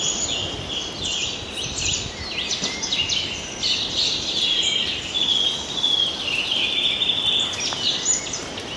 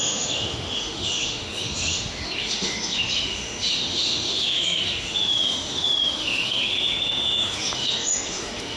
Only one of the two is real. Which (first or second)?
first